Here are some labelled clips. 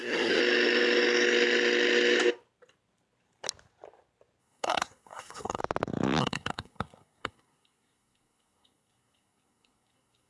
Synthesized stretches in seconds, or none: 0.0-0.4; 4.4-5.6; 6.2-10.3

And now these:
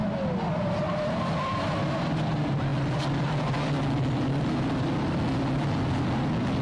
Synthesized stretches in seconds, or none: none